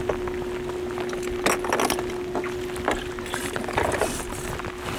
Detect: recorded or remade recorded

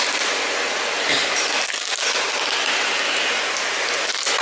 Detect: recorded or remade recorded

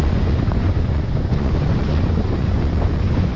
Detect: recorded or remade remade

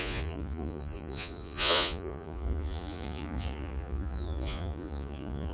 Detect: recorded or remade remade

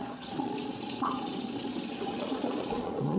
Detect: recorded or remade remade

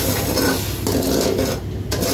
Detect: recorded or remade recorded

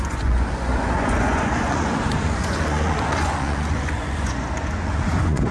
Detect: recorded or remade remade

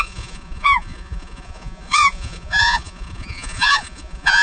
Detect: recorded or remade remade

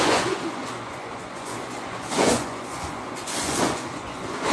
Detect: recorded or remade remade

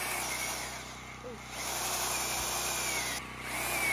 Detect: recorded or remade recorded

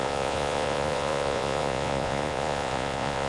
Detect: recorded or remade remade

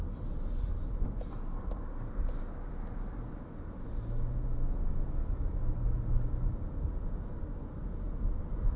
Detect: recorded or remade recorded